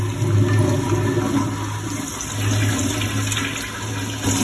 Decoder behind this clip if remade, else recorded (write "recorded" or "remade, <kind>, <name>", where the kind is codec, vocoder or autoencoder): recorded